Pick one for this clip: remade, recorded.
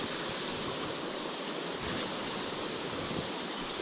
recorded